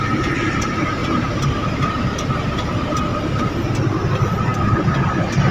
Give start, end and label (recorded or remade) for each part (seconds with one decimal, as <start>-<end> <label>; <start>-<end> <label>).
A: 0.0-1.0 recorded; 1.0-1.9 remade; 1.9-3.1 recorded; 3.1-3.6 remade; 3.6-5.5 recorded